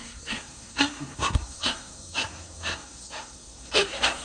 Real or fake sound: fake